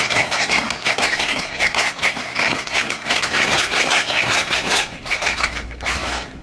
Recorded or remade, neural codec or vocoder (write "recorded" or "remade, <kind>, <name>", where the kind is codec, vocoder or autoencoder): remade, codec, SNAC